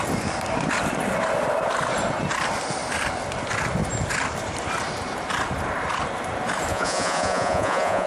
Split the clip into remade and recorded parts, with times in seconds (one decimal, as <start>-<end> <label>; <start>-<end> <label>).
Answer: 0.0-6.7 recorded; 6.7-8.1 remade